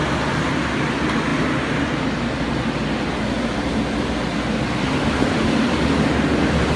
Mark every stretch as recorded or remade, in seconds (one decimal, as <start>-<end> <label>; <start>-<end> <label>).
0.0-6.8 recorded